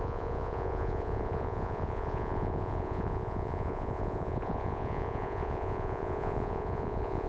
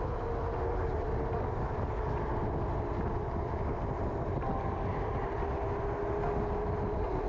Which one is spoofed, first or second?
first